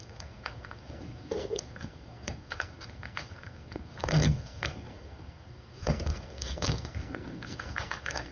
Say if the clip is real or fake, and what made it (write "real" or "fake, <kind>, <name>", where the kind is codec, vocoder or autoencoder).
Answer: fake, codec, SNAC